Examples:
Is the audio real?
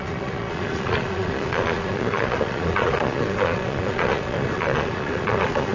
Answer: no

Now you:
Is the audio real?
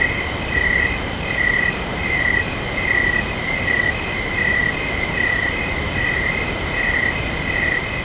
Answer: yes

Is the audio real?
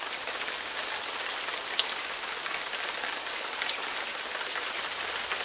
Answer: yes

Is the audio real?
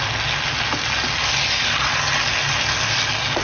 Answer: yes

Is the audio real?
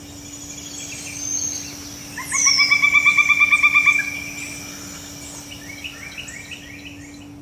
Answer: yes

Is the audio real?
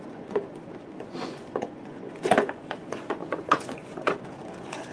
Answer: no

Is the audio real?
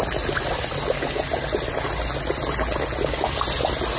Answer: yes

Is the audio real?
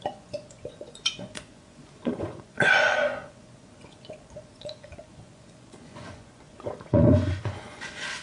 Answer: no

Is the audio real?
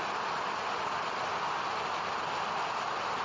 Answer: yes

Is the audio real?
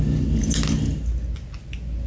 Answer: yes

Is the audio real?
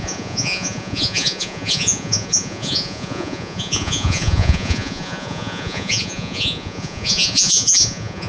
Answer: no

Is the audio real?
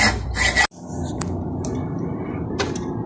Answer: yes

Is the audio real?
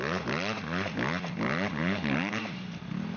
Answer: yes